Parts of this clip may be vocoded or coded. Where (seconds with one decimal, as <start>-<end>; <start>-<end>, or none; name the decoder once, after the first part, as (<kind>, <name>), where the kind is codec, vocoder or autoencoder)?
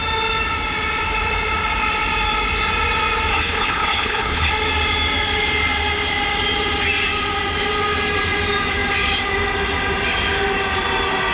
3.3-4.5 (codec, HILCodec)